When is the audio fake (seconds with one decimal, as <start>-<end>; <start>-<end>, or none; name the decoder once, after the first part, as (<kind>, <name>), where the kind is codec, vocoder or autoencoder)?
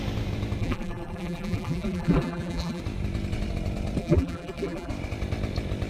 0.6-2.8 (vocoder, BigVGAN v2); 4.0-4.9